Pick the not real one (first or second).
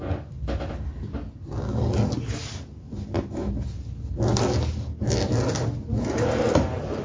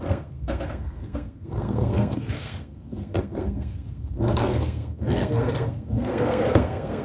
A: second